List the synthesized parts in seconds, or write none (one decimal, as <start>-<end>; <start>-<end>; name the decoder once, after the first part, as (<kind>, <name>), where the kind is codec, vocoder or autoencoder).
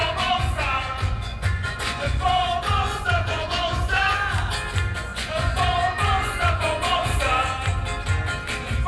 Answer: 0.0-4.0 (vocoder, Vocos); 5.1-7.2